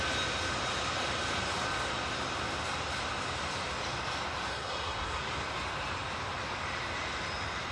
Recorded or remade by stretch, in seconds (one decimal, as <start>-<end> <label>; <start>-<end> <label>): 0.0-4.5 recorded; 4.5-5.2 remade; 5.2-7.7 recorded